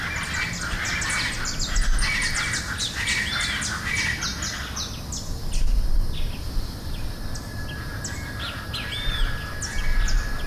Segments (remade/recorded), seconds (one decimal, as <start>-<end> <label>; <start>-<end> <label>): 0.0-10.5 recorded